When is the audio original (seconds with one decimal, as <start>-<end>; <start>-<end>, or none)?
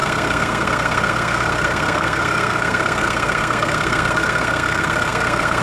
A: none